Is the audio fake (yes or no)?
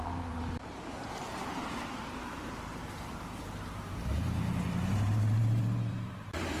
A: yes